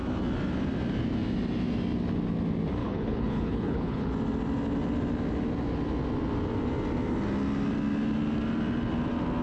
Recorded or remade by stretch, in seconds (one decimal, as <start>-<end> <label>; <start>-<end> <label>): 0.0-2.8 recorded; 2.8-4.1 remade; 4.1-9.4 recorded